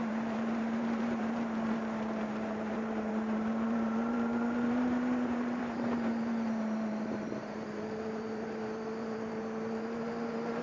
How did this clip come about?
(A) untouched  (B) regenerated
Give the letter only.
B